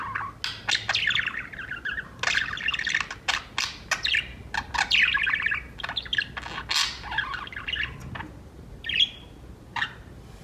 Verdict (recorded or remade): recorded